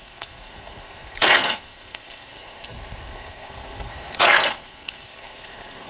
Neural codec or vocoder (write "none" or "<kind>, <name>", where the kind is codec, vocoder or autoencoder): codec, SNAC